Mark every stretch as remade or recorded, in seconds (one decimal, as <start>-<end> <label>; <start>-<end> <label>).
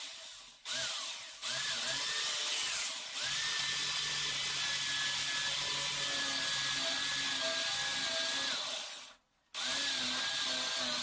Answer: 0.0-11.0 recorded